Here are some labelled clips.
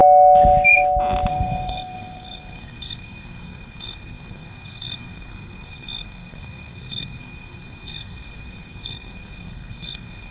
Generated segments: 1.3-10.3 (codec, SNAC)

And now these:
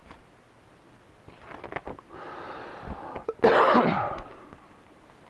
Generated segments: none